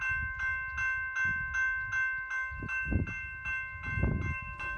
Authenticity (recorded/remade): recorded